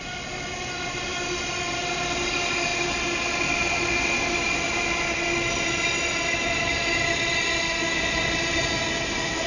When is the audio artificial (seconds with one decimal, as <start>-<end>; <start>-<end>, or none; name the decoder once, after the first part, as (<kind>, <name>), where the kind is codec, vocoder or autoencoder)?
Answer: none